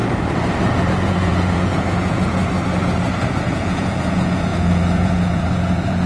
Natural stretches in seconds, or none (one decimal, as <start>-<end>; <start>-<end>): 0.0-0.9; 2.4-3.2